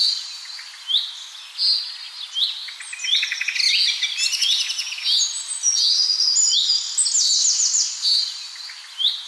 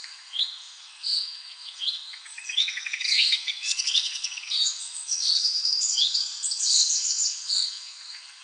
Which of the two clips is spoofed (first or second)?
second